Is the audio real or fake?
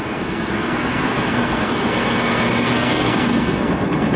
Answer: fake